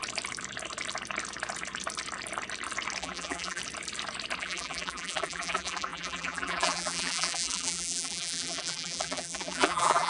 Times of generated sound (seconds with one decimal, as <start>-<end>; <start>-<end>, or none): 3.0-3.6; 4.4-10.1

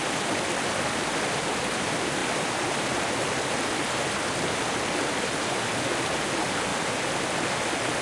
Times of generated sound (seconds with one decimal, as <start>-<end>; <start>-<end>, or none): none